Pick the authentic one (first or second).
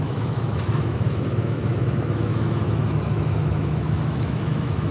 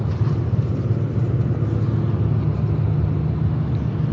second